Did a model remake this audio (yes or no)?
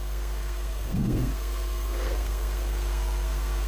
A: yes